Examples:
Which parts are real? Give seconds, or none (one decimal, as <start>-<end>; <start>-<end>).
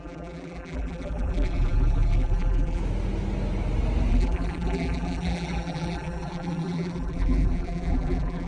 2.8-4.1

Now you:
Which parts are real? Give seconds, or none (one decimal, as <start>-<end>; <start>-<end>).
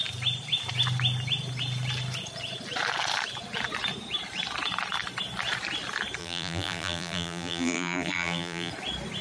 0.0-6.2; 8.7-9.2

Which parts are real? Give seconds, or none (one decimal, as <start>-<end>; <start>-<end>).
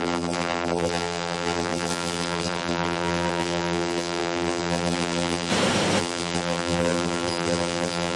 5.5-6.0